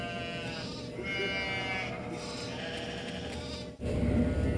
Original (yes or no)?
yes